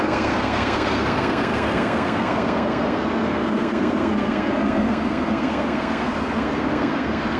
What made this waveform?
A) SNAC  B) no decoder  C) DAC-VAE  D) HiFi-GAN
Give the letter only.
A